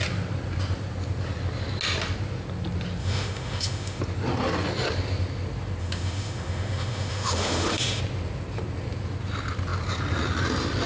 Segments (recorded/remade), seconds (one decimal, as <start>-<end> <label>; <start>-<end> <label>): 0.0-3.0 recorded; 3.0-4.0 remade; 4.0-5.8 recorded; 5.8-8.0 remade; 8.0-10.9 recorded